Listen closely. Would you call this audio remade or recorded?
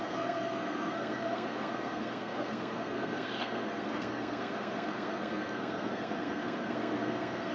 remade